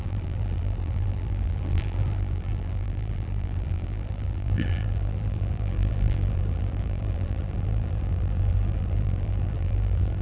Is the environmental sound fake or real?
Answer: fake